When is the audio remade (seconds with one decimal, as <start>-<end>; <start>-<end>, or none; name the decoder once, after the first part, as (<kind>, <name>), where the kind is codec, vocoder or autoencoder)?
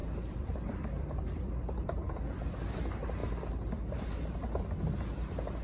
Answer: 0.0-2.6 (vocoder, BigVGAN v2)